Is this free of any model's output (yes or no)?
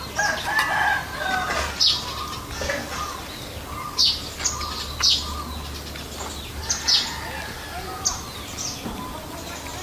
yes